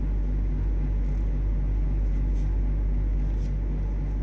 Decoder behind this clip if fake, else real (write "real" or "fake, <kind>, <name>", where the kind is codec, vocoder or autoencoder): real